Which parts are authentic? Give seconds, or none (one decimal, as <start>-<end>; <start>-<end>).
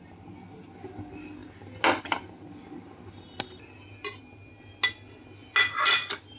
0.0-6.4